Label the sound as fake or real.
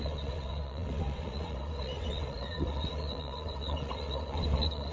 fake